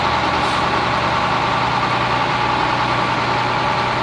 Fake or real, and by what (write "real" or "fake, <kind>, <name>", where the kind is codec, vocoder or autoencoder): real